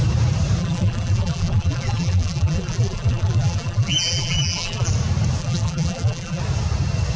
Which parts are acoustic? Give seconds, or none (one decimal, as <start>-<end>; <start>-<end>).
0.0-0.6; 4.9-5.4; 6.4-7.2